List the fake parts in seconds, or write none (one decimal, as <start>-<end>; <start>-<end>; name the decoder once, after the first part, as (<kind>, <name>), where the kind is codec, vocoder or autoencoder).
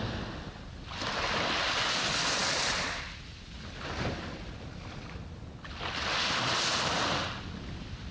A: none